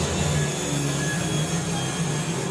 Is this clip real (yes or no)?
yes